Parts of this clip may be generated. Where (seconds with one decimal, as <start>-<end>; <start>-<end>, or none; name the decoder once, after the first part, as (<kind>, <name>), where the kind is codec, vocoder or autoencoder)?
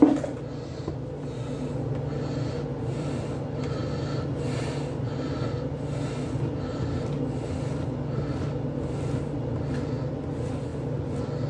2.7-3.2 (vocoder, BigVGAN v2)